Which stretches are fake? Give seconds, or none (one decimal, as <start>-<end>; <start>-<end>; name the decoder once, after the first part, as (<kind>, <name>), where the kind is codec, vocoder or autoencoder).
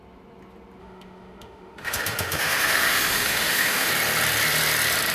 0.8-3.9 (autoencoder, DAC-VAE)